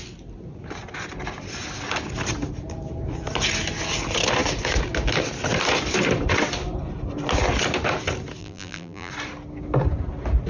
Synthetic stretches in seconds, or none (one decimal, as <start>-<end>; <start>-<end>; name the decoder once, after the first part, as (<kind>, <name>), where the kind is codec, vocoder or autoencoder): 8.4-9.1 (vocoder, BigVGAN v2)